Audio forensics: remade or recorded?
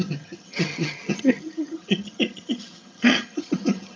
remade